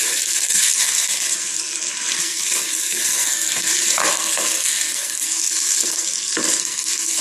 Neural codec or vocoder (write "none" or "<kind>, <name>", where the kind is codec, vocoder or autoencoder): codec, SNAC